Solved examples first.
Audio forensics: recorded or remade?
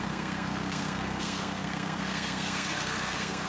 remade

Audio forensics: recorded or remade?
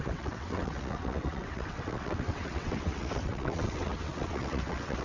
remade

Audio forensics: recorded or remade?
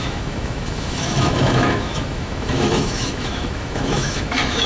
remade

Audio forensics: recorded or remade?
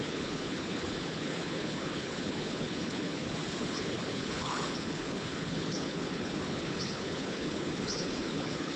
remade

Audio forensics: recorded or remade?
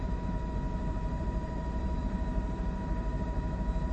remade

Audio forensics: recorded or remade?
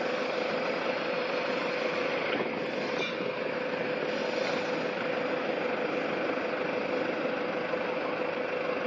recorded